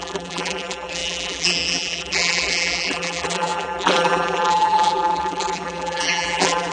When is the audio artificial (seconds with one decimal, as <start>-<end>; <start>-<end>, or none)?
0.0-6.7